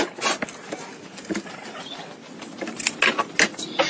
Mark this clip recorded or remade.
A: recorded